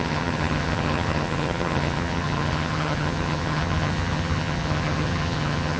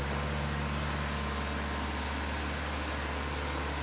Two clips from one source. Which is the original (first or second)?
second